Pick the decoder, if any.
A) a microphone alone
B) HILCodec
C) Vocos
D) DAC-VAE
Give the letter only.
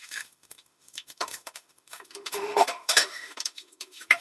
D